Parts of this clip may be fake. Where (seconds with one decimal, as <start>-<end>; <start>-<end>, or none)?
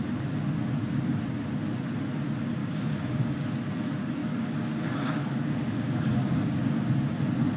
2.6-3.3; 4.2-6.9